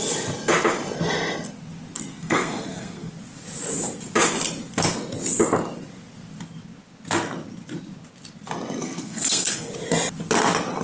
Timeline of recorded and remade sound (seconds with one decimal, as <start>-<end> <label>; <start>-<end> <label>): 0.0-2.1 recorded; 2.1-3.1 remade; 3.1-8.8 recorded; 8.8-9.7 remade; 9.7-10.8 recorded